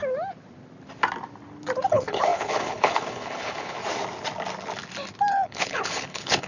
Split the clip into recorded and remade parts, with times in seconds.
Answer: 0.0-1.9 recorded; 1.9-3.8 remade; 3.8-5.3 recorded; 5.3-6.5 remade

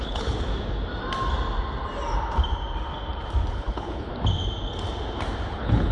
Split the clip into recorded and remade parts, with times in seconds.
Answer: 0.0-0.5 remade; 0.5-3.5 recorded; 3.5-4.1 remade; 4.1-5.5 recorded; 5.5-5.9 remade

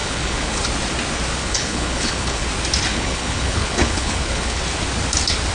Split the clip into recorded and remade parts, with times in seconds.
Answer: 0.0-0.6 remade; 0.6-1.4 recorded; 1.4-2.5 remade; 2.5-2.9 recorded; 2.9-4.6 remade; 4.6-5.5 recorded

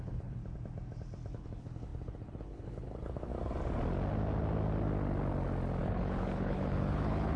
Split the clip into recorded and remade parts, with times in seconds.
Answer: 0.0-0.4 remade; 0.4-1.3 recorded; 1.3-3.3 remade; 3.3-5.8 recorded; 5.8-7.4 remade

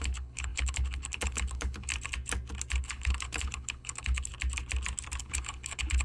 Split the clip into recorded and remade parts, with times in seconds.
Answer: 0.0-1.9 remade; 1.9-2.8 recorded; 2.8-4.3 remade; 4.3-5.2 recorded; 5.2-6.0 remade

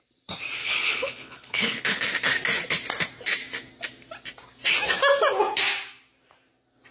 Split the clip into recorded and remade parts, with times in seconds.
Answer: 0.0-0.6 recorded; 0.6-2.0 remade; 2.0-6.9 recorded